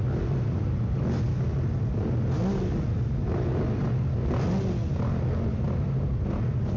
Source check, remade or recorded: recorded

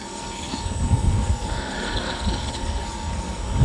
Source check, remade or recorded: remade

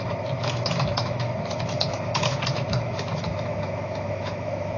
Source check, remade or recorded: remade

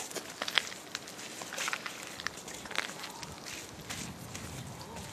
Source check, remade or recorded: recorded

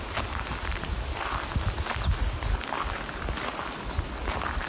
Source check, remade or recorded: recorded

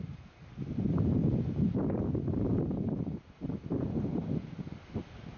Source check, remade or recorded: recorded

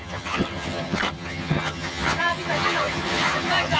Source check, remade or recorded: remade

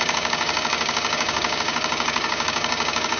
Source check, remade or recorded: remade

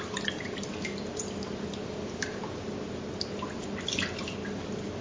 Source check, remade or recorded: recorded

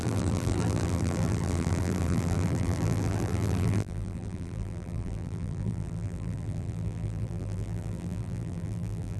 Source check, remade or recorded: remade